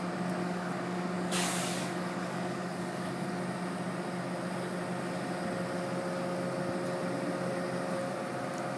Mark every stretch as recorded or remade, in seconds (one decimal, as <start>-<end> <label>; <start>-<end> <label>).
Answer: 0.0-0.4 recorded; 0.4-3.4 remade; 3.4-8.8 recorded